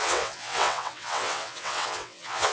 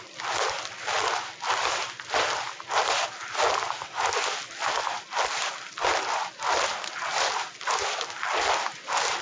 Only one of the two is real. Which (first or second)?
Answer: second